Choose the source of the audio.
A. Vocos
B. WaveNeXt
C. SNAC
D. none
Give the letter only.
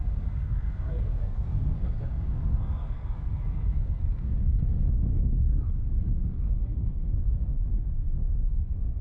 C